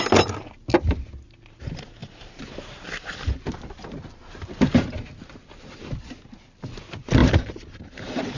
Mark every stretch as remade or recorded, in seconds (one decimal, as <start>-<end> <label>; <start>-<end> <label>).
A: 0.0-8.4 recorded